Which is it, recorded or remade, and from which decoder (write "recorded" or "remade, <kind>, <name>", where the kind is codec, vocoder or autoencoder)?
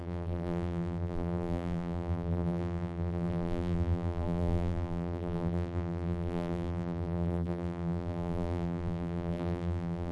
remade, vocoder, BigVGAN v2